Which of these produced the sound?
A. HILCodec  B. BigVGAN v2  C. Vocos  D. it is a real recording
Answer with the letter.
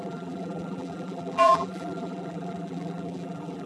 B